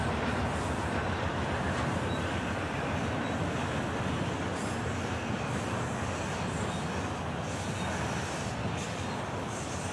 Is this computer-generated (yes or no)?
no